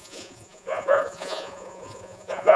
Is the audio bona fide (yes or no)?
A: no